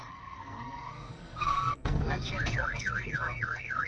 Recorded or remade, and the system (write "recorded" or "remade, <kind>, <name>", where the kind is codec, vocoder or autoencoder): remade, codec, SNAC